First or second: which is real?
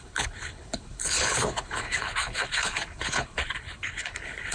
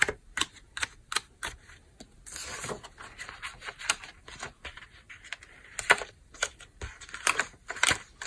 second